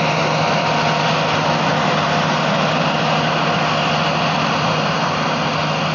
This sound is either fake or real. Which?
real